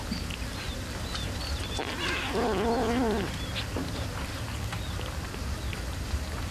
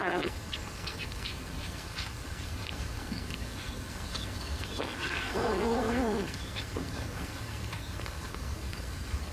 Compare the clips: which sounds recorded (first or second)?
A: first